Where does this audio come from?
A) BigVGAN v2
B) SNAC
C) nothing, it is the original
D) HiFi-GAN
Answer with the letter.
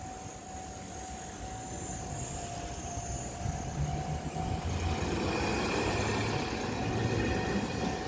C